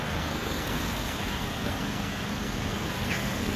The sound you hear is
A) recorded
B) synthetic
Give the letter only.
B